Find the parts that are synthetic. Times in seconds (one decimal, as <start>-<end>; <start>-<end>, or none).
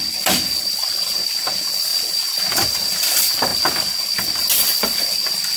0.0-1.9; 2.7-3.5; 4.8-5.6